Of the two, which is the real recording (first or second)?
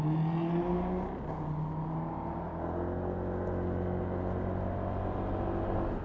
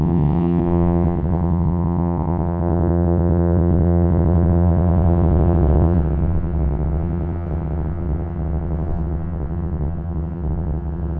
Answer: first